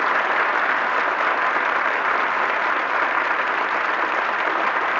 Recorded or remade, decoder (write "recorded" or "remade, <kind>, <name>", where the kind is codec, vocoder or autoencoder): remade, vocoder, BigVGAN v2